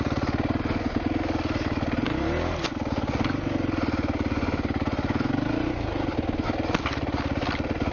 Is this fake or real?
real